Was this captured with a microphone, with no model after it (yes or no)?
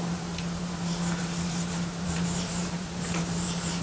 no